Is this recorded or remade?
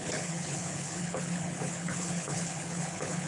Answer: remade